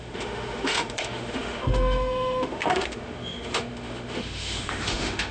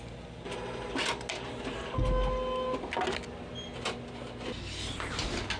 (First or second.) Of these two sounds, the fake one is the first